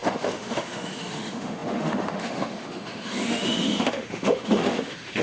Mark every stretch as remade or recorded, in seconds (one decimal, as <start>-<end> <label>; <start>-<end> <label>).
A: 0.0-5.2 remade